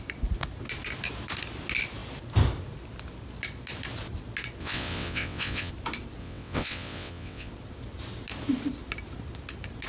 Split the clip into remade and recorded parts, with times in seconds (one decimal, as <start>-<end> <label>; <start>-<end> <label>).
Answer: 0.0-4.6 recorded; 4.6-5.7 remade; 5.7-6.2 recorded; 6.2-7.5 remade; 7.5-9.9 recorded